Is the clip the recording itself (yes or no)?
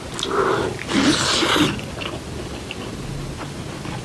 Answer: yes